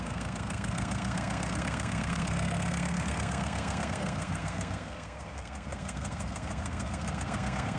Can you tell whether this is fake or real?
fake